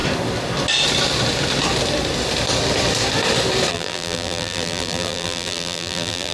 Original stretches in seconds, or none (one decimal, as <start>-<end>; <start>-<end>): 0.0-3.7